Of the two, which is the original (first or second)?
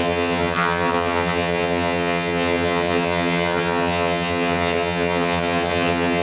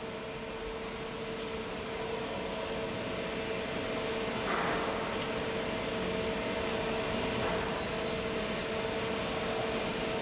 second